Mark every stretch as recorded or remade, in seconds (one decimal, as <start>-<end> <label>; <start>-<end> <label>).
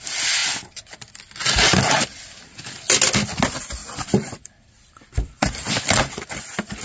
0.0-3.8 recorded; 3.8-5.7 remade; 5.7-6.8 recorded